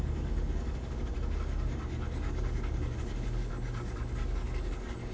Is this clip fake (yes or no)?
yes